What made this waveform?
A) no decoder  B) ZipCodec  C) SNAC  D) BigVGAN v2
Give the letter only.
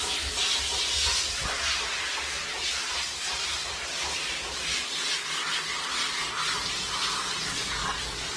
A